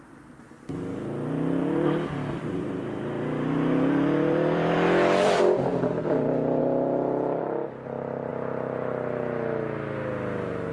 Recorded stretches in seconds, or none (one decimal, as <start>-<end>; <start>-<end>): 8.3-10.7